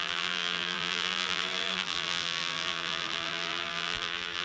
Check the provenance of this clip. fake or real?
fake